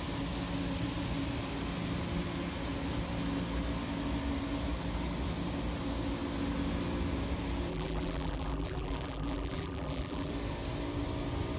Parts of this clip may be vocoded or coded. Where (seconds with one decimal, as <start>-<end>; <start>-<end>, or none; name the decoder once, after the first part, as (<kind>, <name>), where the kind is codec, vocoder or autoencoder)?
7.7-10.3 (vocoder, BigVGAN v2)